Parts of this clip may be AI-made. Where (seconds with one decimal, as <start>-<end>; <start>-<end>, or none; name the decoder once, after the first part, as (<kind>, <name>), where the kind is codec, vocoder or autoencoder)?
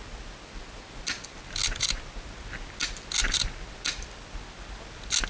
none